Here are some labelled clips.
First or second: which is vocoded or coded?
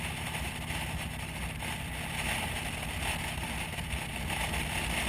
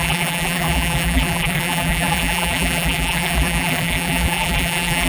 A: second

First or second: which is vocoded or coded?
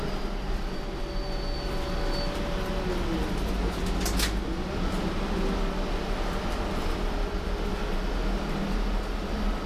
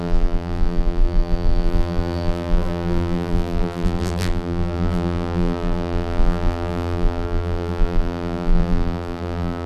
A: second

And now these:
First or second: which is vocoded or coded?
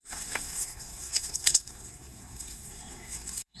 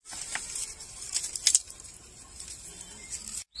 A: first